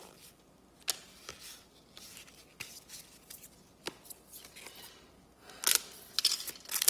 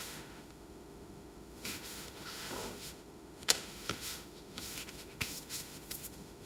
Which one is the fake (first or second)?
second